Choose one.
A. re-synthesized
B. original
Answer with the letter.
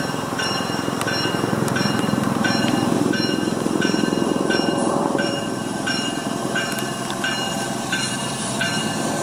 A